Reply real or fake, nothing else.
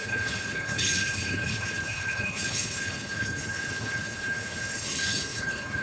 fake